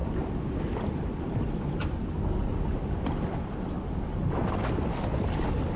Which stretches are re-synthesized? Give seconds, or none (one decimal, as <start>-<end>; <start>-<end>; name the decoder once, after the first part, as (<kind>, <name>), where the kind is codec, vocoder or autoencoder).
none